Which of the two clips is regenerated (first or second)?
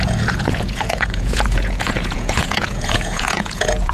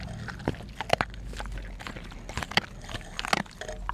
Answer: first